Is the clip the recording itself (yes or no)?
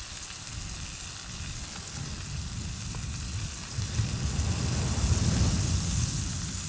yes